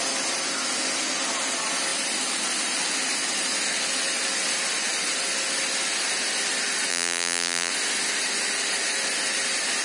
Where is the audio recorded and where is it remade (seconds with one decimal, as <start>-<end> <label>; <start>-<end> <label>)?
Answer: 0.0-6.9 recorded; 6.9-7.7 remade; 7.7-9.8 recorded